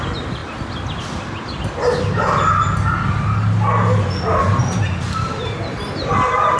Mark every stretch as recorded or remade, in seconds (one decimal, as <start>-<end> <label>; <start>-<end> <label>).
0.0-6.6 recorded